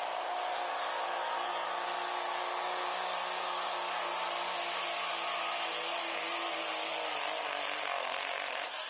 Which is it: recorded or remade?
recorded